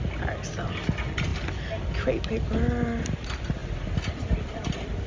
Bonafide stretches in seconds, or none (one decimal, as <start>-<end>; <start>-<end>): 0.0-5.1